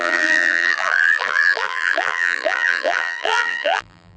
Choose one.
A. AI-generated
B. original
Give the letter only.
A